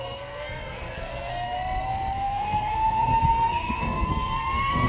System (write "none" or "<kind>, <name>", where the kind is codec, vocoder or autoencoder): codec, SNAC